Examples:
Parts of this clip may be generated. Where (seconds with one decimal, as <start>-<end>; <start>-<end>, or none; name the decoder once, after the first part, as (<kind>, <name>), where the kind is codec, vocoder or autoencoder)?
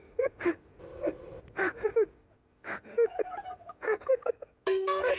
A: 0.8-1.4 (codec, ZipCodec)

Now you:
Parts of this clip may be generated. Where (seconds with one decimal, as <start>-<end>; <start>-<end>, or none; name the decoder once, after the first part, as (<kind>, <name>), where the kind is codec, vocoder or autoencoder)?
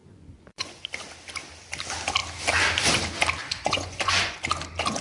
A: 0.0-0.9 (vocoder, Vocos); 3.4-4.4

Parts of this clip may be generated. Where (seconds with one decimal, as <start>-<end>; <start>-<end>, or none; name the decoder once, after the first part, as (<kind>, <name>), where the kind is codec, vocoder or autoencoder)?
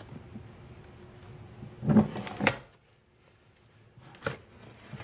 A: none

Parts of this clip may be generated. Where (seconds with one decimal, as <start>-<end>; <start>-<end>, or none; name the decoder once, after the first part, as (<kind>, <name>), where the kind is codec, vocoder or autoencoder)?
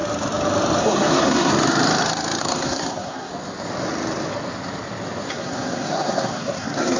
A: 0.8-1.5 (codec, SNAC); 2.4-3.3; 5.3-7.0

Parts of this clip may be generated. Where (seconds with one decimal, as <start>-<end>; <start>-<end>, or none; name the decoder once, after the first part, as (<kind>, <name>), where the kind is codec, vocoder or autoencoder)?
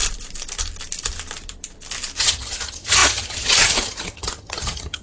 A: 2.2-5.0 (vocoder, HiFi-GAN)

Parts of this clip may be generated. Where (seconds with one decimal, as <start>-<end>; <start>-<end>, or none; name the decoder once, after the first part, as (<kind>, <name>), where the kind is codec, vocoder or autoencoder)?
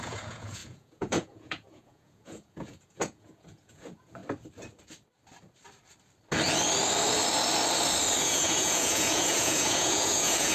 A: 0.0-4.2 (vocoder, Vocos); 8.2-10.5